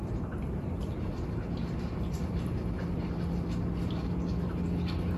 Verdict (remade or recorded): recorded